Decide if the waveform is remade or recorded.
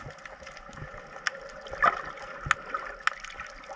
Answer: recorded